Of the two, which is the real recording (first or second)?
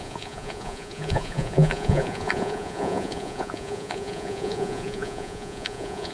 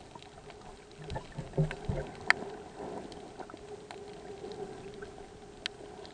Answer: second